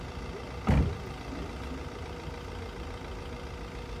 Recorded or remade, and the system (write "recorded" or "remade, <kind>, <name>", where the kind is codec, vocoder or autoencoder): recorded